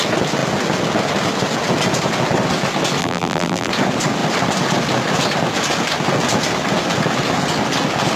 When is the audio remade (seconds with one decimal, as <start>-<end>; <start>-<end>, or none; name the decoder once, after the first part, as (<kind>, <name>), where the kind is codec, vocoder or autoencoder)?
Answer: 3.0-3.7 (vocoder, BigVGAN v2)